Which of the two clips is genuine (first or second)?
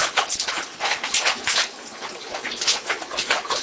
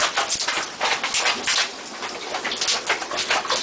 second